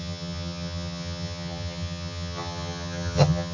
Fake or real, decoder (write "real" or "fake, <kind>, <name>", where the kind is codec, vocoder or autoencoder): fake, vocoder, HiFi-GAN